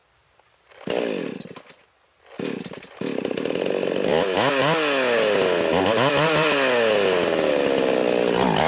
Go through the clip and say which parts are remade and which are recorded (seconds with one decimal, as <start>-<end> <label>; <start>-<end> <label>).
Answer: 0.0-8.7 recorded